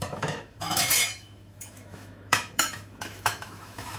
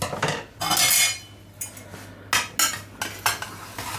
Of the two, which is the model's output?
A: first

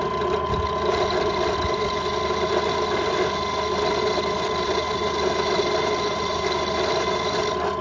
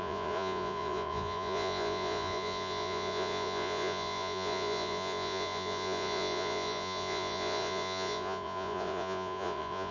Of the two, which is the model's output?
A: second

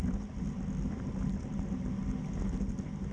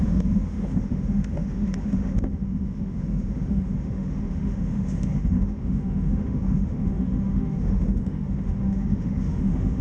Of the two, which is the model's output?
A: second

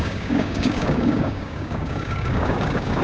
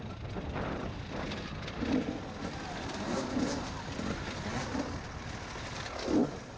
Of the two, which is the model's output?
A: first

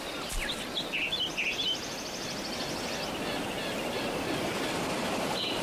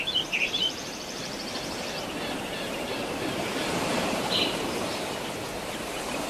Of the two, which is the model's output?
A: second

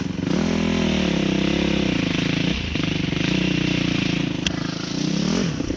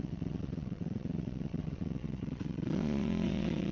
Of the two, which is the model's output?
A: second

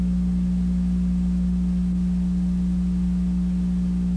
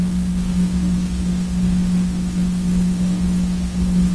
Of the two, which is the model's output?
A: second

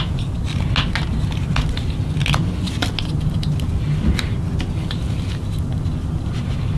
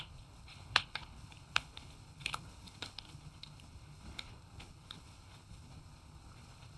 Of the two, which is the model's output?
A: second